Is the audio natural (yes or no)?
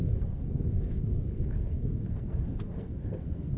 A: no